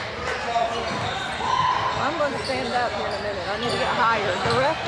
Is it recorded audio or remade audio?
recorded